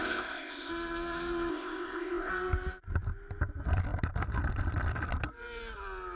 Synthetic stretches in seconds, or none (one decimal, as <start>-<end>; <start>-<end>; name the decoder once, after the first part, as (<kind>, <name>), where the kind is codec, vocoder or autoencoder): 0.0-0.7 (codec, ZipCodec); 1.5-2.3